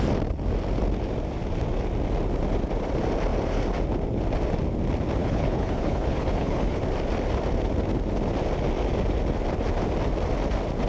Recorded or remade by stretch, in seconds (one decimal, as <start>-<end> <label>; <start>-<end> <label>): 0.0-5.2 recorded; 5.2-6.8 remade; 6.8-10.9 recorded